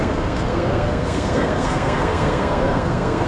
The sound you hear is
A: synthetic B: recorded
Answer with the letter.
A